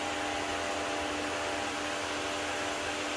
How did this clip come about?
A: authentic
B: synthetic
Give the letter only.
A